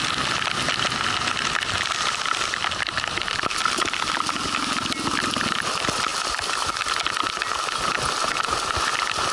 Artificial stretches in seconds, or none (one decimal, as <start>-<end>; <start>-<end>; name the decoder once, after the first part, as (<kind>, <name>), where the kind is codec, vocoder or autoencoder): none